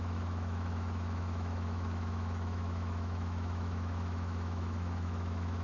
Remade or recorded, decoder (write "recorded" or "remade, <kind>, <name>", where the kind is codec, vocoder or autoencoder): remade, autoencoder, DAC-VAE